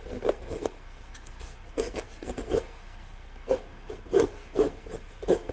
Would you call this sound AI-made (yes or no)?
yes